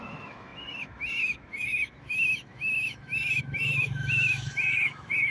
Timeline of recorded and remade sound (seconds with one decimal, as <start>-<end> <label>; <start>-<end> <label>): 0.0-5.3 remade